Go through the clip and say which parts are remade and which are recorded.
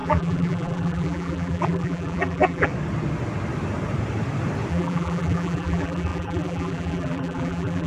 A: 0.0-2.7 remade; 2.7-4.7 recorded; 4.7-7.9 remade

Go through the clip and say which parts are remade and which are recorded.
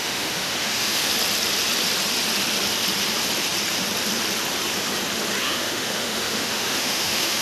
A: 0.0-1.0 remade; 1.0-5.4 recorded; 5.4-7.4 remade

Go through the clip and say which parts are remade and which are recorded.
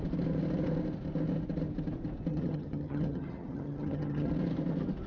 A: 0.0-2.3 recorded; 2.3-4.3 remade; 4.3-5.1 recorded